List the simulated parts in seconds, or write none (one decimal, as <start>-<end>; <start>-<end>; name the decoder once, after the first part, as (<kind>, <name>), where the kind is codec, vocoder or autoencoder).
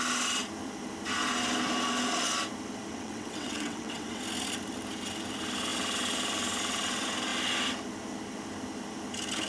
2.9-4.2 (vocoder, WaveNeXt)